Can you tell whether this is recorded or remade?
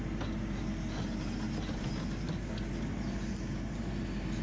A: recorded